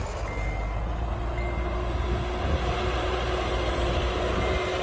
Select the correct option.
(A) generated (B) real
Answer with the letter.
B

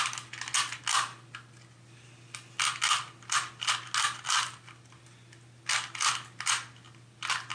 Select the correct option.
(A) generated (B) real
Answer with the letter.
B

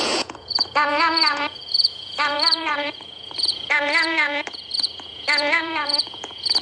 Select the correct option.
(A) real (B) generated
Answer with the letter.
B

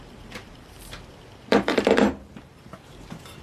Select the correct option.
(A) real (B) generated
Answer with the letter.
B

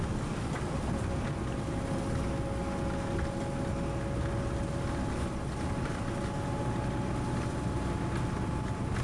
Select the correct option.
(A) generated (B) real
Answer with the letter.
B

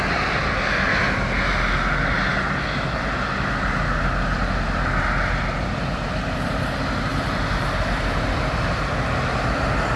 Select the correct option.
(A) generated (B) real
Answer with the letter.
B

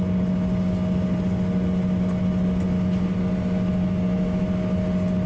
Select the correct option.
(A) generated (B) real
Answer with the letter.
B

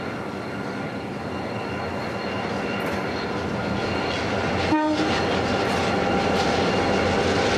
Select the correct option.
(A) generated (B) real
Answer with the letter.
B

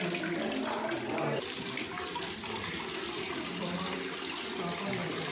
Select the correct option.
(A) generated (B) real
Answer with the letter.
B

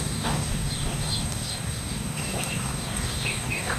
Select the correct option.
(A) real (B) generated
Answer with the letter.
B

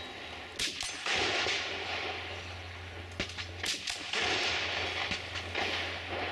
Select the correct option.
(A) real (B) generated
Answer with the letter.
A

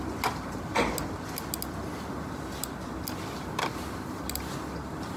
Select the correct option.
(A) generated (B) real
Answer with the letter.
B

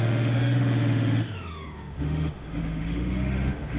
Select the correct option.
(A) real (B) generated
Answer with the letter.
B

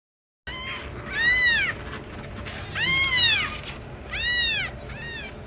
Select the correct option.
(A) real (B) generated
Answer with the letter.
A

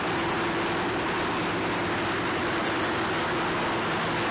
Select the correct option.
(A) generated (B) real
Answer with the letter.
B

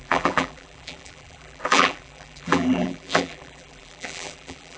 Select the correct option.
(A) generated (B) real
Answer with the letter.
A